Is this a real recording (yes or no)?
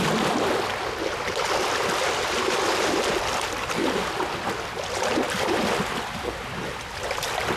yes